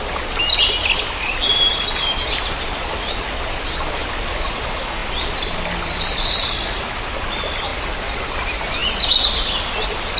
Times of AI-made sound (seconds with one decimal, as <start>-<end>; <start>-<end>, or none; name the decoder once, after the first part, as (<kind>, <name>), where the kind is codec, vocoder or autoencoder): none